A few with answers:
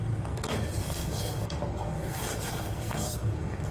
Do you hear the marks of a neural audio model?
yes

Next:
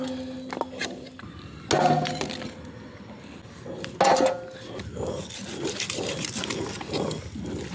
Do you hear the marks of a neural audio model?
no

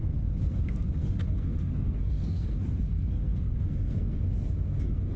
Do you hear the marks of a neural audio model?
yes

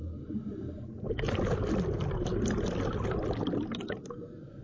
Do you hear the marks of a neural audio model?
no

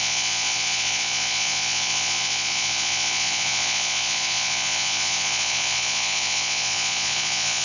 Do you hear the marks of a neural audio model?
yes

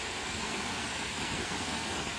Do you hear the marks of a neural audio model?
yes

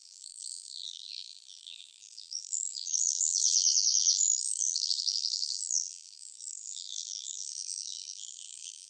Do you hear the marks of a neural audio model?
yes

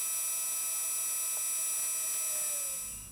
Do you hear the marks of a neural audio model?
no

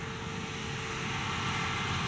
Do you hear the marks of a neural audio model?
no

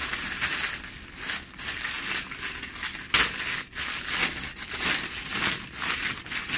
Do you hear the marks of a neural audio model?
no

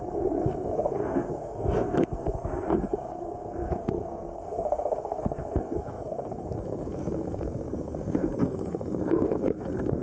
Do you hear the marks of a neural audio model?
yes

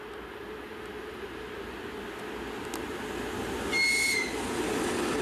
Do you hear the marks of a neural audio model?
no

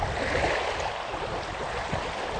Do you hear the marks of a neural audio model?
no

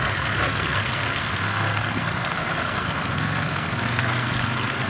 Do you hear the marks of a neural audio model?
yes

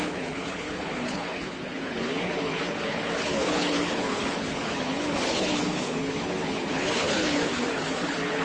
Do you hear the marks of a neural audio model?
yes